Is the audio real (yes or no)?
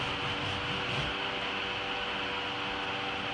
yes